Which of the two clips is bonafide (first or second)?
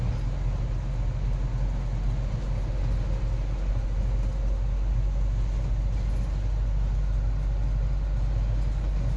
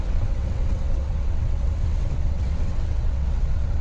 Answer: first